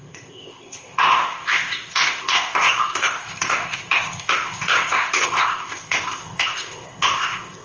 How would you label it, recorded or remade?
remade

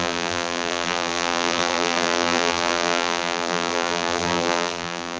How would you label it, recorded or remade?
remade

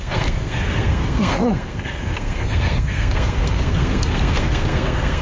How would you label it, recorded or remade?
remade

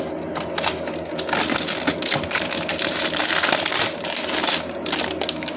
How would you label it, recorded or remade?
recorded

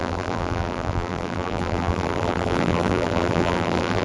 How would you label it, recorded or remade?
remade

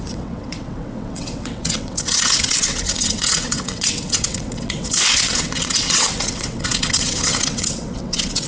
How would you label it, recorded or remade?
remade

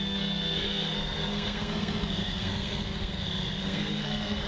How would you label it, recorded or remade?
remade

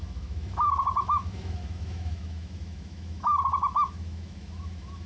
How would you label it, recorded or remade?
remade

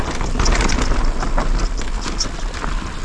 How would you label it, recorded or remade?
recorded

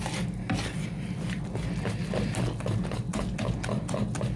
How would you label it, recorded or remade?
recorded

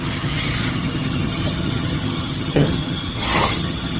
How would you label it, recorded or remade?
remade